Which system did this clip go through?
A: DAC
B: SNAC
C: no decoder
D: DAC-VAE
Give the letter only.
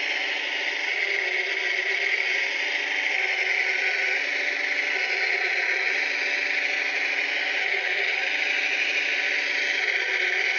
C